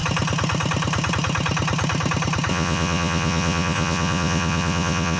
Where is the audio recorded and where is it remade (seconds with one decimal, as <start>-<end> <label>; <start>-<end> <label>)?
0.0-2.5 recorded; 2.5-5.2 remade